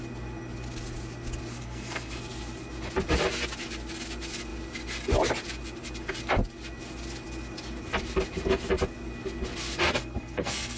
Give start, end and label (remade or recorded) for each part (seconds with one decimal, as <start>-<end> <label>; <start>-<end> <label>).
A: 0.0-1.5 recorded; 1.5-2.2 remade; 2.2-10.0 recorded; 10.0-10.8 remade